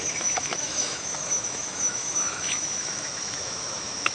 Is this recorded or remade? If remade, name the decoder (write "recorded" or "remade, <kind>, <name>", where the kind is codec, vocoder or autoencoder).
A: remade, autoencoder, DAC-VAE